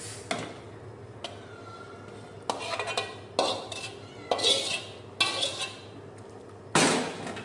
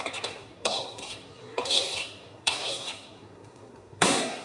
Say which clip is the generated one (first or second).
second